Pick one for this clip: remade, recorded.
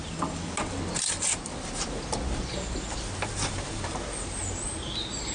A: recorded